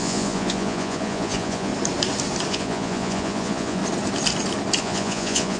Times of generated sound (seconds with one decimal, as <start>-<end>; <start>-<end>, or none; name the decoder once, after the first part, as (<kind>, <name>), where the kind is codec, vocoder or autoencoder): 0.0-1.7 (vocoder, Vocos); 2.5-3.8; 4.8-5.6